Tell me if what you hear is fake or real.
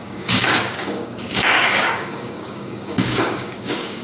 fake